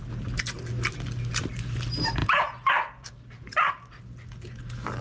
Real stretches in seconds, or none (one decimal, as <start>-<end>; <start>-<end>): 0.0-2.2; 3.7-5.0